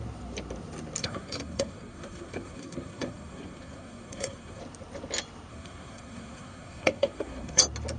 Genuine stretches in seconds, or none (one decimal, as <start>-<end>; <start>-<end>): 0.0-1.0; 4.6-5.5; 7.6-8.0